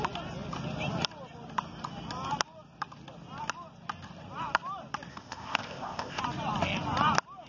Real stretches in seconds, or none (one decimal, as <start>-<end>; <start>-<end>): 0.0-5.1; 6.2-7.5